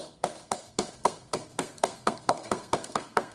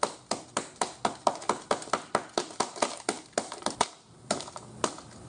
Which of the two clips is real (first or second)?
second